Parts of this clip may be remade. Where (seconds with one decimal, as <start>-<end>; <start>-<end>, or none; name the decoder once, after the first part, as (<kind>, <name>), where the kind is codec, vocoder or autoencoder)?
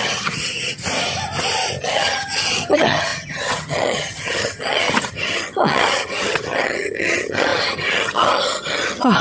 0.0-0.8 (vocoder, HiFi-GAN); 1.8-9.2